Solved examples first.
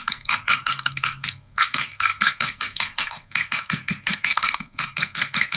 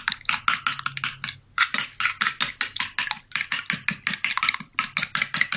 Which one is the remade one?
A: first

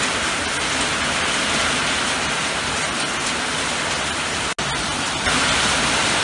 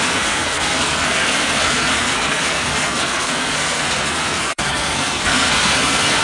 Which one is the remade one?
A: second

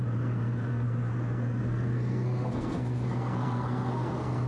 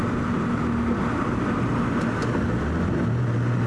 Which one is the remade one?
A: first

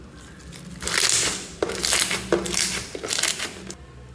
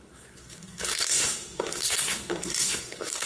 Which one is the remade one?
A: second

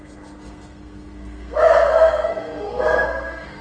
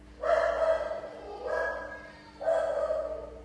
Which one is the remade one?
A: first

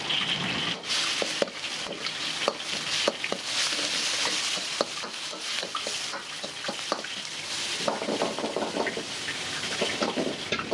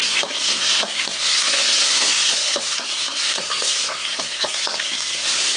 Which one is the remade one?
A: second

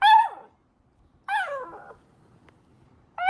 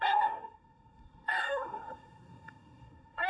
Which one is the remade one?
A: second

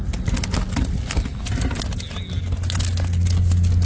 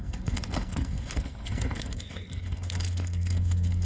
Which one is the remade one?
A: second